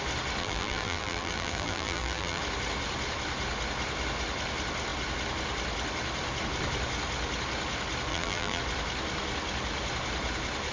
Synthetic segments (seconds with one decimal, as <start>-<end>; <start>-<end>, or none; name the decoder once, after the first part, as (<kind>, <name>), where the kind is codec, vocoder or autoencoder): 0.4-2.4 (vocoder, BigVGAN v2); 8.1-8.6